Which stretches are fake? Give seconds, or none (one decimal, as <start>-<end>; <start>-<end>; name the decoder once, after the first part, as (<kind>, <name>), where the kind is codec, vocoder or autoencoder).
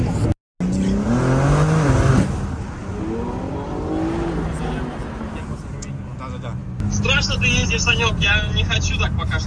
none